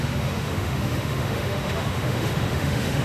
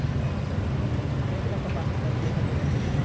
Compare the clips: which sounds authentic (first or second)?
second